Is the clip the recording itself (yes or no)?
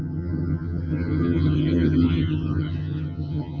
no